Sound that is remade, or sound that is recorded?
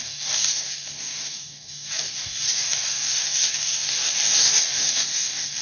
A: remade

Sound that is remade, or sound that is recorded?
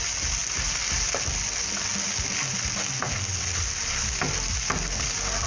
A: recorded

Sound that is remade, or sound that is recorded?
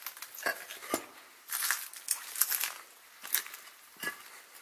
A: recorded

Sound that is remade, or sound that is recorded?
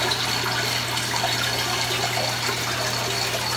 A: recorded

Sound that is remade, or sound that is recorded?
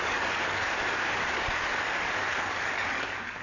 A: remade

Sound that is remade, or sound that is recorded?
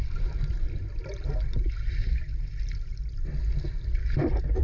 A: recorded